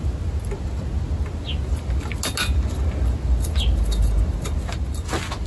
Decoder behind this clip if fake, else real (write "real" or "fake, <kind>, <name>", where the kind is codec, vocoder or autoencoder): real